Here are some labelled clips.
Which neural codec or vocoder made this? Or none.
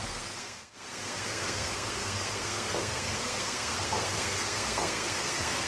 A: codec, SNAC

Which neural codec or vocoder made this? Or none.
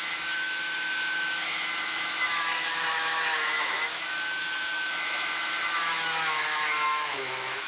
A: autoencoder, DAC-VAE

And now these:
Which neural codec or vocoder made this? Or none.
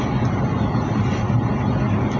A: none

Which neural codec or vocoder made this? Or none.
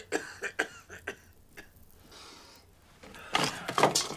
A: none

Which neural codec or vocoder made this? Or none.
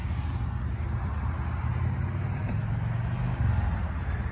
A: none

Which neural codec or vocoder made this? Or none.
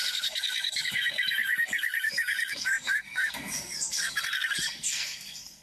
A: codec, SNAC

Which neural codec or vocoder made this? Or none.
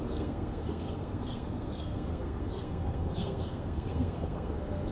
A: codec, SNAC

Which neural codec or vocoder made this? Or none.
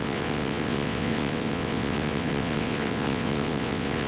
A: vocoder, WaveNeXt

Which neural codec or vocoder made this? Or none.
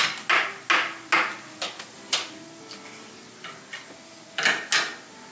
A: none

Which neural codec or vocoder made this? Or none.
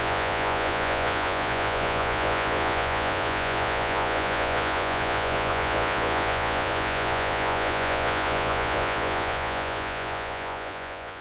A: vocoder, Vocos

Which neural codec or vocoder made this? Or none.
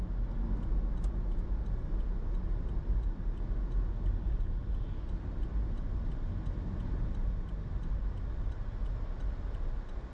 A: none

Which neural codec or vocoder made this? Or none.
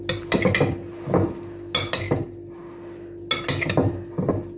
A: none